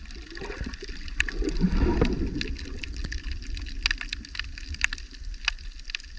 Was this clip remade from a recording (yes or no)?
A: no